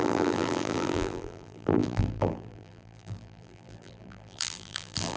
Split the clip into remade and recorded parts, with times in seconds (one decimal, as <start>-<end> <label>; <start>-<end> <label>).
0.0-5.2 remade